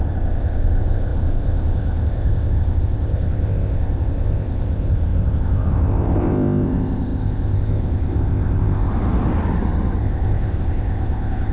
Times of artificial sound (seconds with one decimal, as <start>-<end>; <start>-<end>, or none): 0.0-8.9; 10.0-11.5